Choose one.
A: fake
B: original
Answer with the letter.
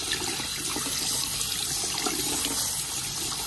B